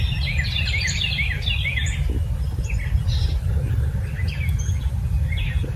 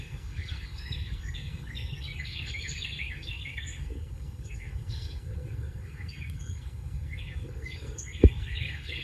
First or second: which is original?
first